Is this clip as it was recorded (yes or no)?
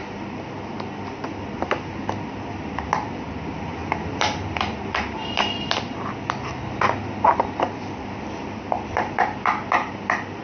no